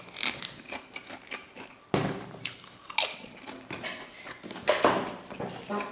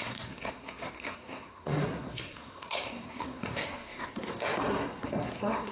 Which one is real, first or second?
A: first